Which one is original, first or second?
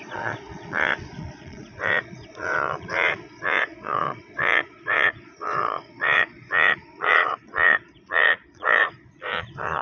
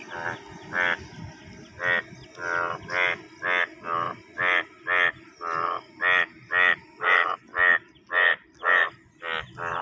second